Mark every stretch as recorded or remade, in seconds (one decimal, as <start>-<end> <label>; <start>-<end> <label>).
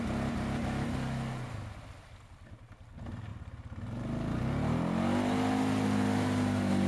0.0-6.9 recorded